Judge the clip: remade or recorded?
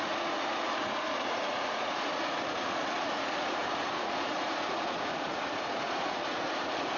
remade